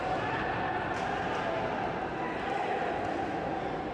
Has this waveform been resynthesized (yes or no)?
no